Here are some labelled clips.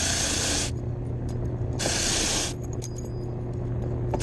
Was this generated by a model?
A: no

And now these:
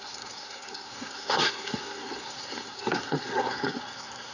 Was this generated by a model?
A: yes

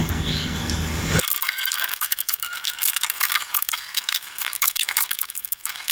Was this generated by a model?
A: yes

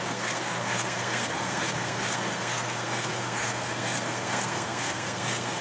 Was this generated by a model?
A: yes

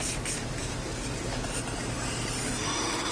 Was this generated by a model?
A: no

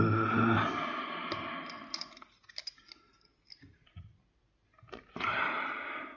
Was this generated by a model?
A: no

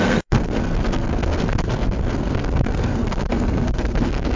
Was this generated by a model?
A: yes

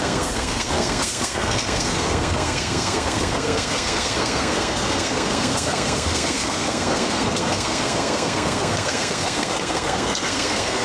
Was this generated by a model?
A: yes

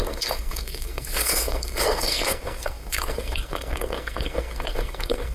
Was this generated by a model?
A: yes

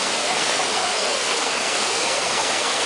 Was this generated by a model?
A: yes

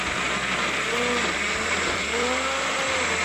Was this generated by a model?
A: no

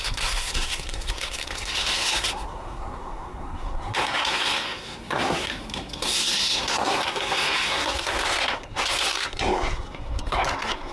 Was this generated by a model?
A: yes